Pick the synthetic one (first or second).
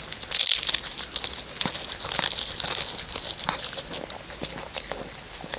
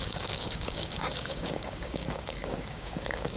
second